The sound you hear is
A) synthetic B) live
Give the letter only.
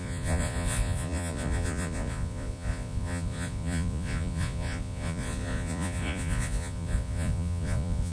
A